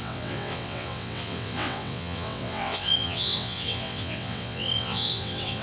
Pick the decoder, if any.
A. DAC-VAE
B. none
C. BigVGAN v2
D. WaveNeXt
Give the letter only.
D